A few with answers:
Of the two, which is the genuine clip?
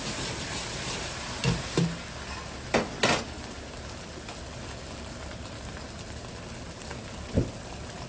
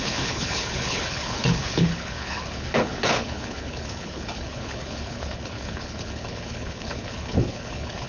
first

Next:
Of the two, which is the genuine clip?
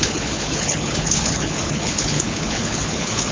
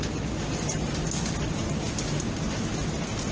second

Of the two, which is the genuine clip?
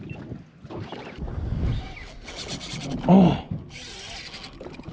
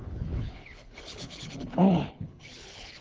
first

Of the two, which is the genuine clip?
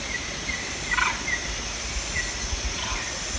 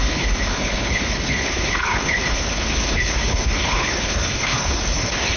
first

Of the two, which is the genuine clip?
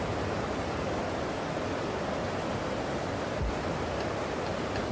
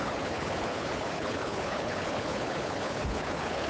first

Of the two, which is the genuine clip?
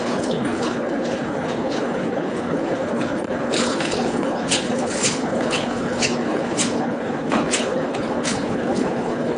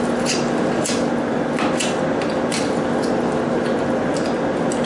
second